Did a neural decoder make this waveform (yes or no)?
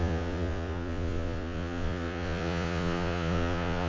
yes